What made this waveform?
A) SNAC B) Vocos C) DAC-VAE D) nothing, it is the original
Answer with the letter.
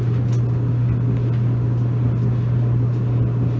D